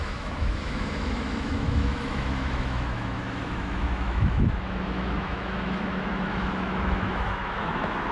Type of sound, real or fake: fake